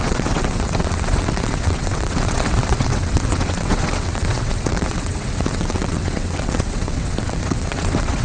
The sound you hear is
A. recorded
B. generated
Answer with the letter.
B